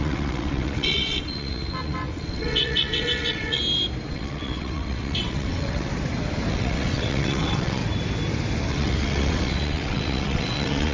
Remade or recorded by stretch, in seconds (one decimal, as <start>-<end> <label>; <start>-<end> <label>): 0.0-3.6 remade; 3.6-4.1 recorded; 4.1-5.9 remade; 5.9-6.5 recorded; 6.5-7.8 remade; 7.8-8.7 recorded; 8.7-10.9 remade